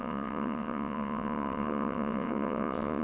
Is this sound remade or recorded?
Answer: remade